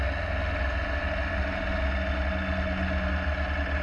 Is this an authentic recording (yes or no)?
yes